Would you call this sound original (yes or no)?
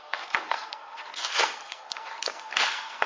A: no